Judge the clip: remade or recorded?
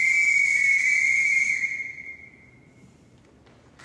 remade